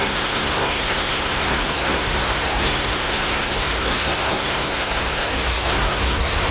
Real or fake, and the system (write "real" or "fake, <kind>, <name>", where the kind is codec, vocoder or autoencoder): fake, codec, SNAC